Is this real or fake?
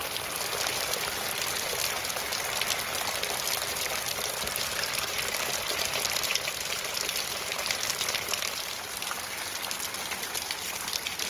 real